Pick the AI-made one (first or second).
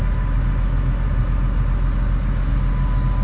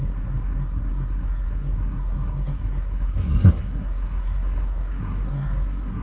second